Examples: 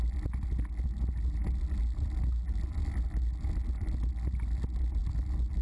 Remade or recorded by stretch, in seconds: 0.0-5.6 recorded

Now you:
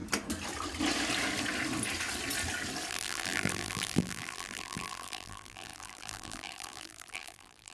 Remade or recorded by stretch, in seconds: 0.0-2.9 recorded; 2.9-7.7 remade